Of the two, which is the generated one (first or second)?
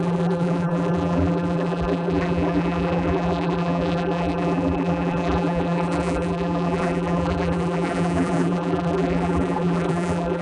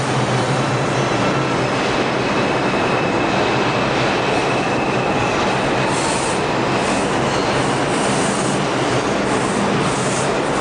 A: first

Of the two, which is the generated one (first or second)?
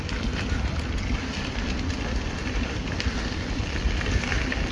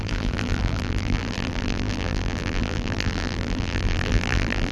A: second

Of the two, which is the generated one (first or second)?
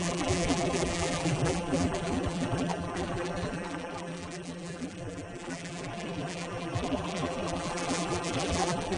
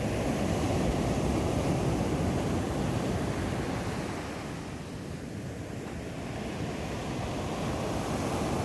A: first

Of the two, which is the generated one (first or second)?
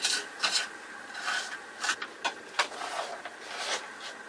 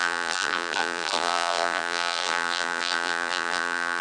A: second